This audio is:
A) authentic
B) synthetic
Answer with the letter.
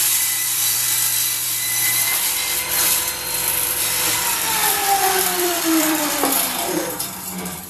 B